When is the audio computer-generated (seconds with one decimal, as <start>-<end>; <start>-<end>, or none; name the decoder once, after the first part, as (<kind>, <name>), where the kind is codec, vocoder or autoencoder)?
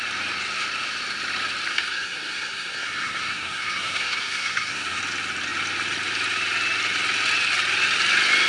1.7-5.0 (codec, SNAC)